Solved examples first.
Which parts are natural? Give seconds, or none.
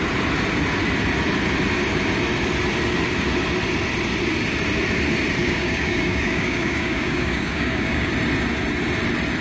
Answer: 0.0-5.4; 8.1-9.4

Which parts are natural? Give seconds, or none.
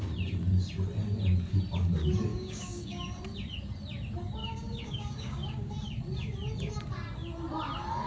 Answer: 0.0-2.3; 3.0-4.4; 5.7-8.1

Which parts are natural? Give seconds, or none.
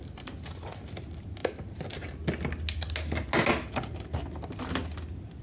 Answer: 0.0-5.4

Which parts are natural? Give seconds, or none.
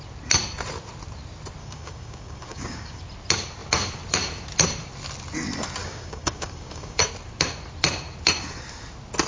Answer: 0.0-1.6; 3.0-5.8; 7.0-9.3